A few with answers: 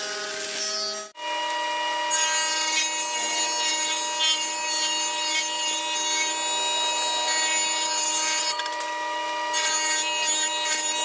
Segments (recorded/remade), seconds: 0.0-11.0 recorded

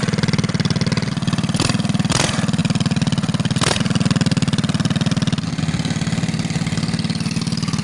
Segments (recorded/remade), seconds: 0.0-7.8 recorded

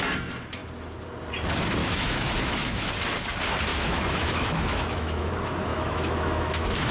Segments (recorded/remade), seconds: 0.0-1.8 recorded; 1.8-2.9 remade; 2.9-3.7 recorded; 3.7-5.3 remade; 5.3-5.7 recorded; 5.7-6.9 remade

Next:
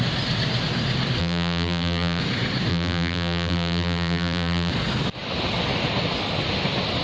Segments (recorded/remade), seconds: 0.0-1.2 recorded; 1.2-2.2 remade; 2.2-2.7 recorded; 2.7-4.7 remade; 4.7-7.0 recorded

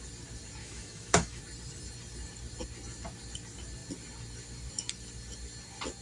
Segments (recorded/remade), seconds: 0.0-0.6 recorded; 0.6-1.4 remade; 1.4-6.0 recorded

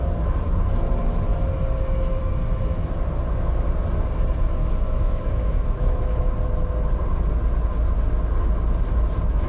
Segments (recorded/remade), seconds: 0.0-4.6 recorded; 4.6-6.2 remade; 6.2-9.5 recorded